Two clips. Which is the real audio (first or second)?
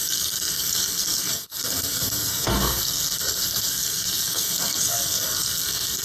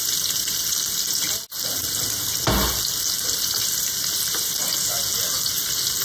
second